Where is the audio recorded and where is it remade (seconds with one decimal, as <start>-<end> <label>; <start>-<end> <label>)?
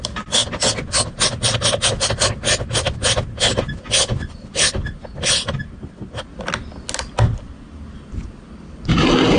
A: 0.0-9.4 recorded